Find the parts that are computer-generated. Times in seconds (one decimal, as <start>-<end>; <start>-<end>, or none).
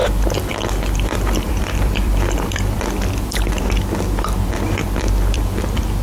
0.0-3.6; 4.8-5.6